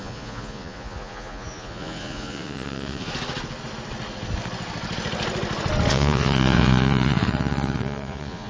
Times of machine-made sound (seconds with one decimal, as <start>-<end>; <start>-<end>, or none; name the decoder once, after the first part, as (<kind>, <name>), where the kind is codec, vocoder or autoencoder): 0.0-3.1 (vocoder, Vocos); 5.9-8.5